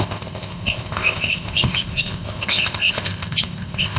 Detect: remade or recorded remade